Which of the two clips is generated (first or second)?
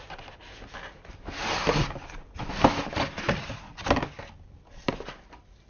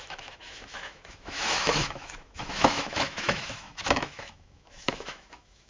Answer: second